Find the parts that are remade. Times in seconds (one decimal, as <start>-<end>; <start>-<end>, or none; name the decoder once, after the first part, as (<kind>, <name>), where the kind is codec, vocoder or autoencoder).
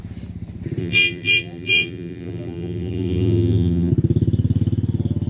0.8-3.9 (vocoder, BigVGAN v2)